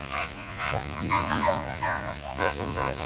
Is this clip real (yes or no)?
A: no